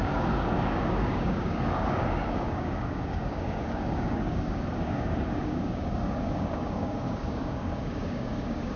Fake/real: fake